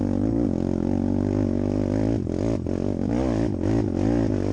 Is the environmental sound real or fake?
real